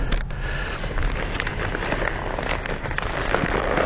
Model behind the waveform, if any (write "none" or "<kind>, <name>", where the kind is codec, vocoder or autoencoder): none